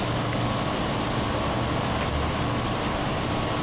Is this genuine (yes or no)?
yes